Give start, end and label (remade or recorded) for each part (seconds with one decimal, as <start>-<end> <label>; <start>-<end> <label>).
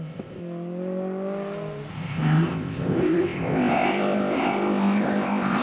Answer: 0.0-0.4 remade; 0.4-1.9 recorded; 1.9-5.6 remade